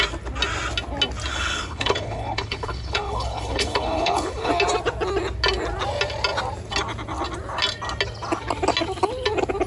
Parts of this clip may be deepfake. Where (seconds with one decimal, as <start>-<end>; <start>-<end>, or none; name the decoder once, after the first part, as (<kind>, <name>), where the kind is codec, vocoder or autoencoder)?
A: 1.3-4.5 (codec, HILCodec)